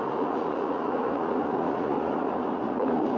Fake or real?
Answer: fake